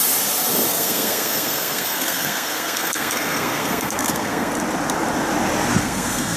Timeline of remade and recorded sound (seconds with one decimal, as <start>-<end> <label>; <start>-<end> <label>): 0.0-0.7 recorded; 0.7-4.5 remade; 4.5-5.8 recorded; 5.8-6.4 remade